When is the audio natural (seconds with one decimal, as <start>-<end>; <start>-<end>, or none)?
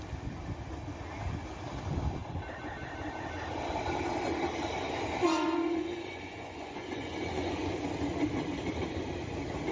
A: 0.0-5.2; 7.9-9.7